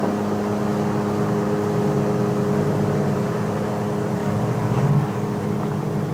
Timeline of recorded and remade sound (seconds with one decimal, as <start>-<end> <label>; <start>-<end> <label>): 0.0-4.2 recorded; 4.2-5.4 remade; 5.4-6.1 recorded